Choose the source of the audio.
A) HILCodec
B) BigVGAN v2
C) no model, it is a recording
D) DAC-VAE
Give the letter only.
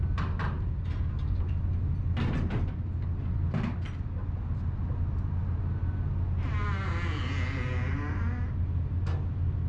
C